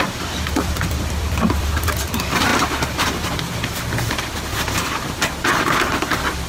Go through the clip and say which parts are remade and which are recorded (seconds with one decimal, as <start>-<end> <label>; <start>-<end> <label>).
0.0-2.5 remade; 2.5-6.5 recorded